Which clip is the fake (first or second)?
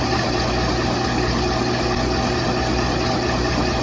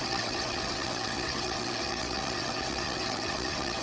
second